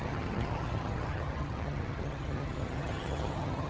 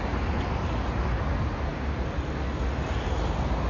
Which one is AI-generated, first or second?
first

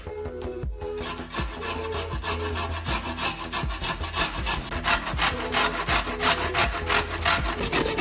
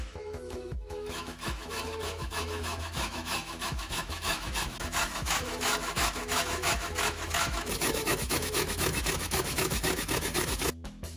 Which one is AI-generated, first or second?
second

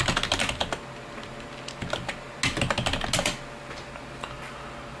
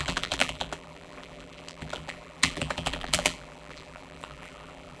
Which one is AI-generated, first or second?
second